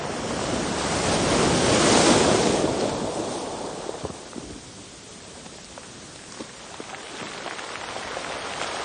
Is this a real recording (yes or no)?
yes